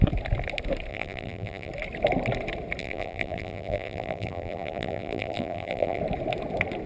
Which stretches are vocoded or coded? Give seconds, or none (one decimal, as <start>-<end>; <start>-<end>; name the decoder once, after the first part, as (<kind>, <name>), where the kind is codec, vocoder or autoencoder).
0.9-1.7 (vocoder, BigVGAN v2); 2.8-6.0